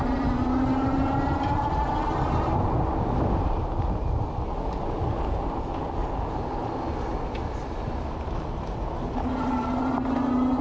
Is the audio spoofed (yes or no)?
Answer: no